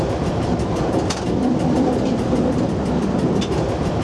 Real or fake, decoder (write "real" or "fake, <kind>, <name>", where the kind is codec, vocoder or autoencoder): real